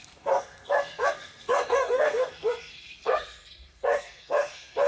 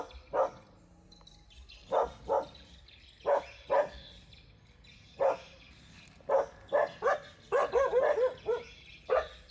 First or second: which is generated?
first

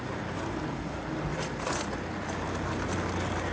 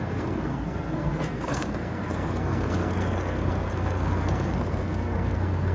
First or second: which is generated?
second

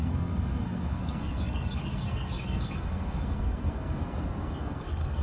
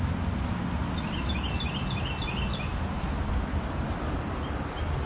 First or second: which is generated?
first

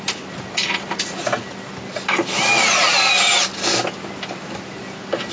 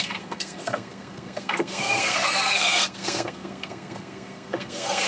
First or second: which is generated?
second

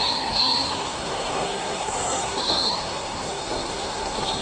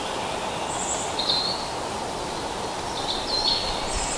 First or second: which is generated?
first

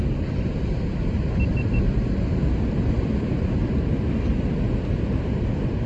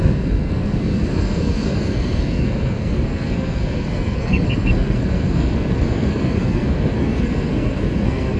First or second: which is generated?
second